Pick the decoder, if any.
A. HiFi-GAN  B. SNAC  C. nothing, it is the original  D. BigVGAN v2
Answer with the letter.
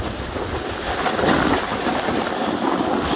C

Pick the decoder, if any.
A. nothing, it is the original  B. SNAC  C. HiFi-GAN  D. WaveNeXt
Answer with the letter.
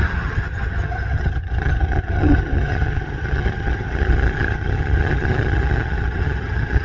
C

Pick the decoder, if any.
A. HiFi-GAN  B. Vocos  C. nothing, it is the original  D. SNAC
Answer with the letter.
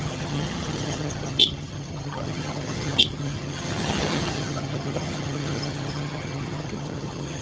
A